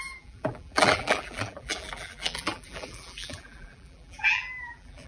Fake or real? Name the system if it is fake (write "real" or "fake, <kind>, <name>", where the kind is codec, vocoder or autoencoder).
fake, vocoder, BigVGAN v2